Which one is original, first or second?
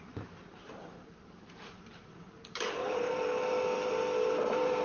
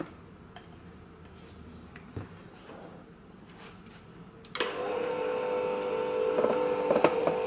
second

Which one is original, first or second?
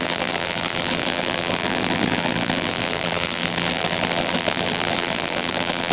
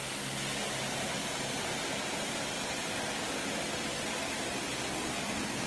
second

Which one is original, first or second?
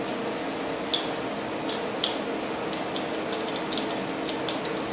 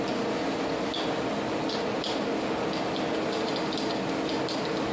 first